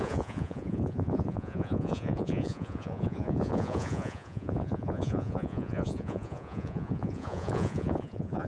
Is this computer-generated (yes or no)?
yes